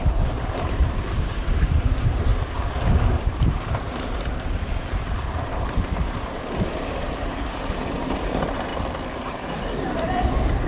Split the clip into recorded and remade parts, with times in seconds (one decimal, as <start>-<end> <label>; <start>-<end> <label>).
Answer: 0.0-2.3 remade; 2.3-3.0 recorded; 3.0-8.7 remade; 8.7-9.3 recorded; 9.3-10.7 remade

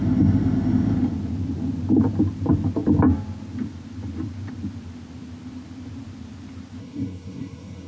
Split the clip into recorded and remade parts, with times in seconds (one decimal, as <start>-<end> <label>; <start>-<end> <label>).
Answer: 0.0-6.8 recorded; 6.8-7.9 remade

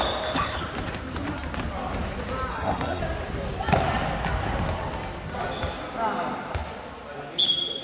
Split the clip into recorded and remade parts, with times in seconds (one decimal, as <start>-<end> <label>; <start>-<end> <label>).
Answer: 0.0-2.5 recorded; 2.5-3.0 remade; 3.0-7.8 recorded

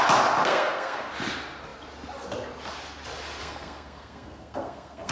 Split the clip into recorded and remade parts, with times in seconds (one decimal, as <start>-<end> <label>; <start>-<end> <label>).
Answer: 0.0-0.4 recorded; 0.4-1.1 remade; 1.1-3.4 recorded; 3.4-5.1 remade

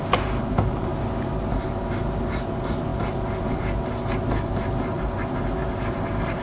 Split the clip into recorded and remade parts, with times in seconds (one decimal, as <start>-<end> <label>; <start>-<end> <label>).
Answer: 0.0-6.4 recorded